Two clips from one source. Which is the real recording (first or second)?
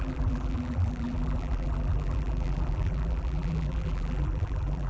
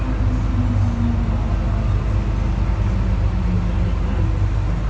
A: second